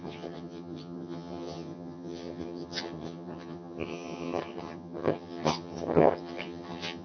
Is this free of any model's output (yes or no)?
no